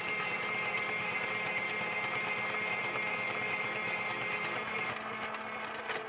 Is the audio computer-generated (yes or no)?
no